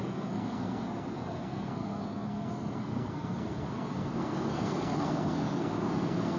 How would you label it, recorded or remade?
remade